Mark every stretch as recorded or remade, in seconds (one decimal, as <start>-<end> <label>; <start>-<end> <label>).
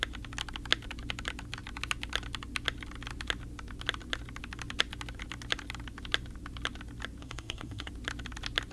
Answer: 0.0-7.2 recorded; 7.2-7.9 remade; 7.9-8.7 recorded